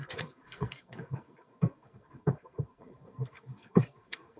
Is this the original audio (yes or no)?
no